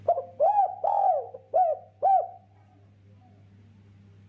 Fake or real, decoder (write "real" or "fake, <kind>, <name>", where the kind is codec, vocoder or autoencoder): real